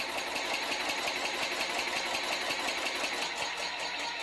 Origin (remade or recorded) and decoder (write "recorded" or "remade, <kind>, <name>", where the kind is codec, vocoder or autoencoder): recorded